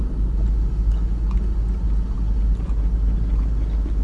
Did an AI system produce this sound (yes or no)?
no